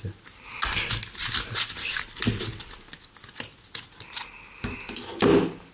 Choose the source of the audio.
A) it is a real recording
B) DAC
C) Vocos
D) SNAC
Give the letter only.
A